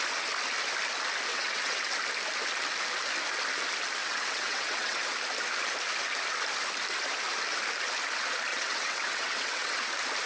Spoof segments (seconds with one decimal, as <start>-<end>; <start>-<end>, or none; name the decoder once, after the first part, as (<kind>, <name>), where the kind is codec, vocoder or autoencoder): 1.3-1.9 (vocoder, WaveNeXt); 4.0-5.0; 8.5-9.9